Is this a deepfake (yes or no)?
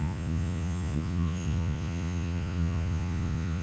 yes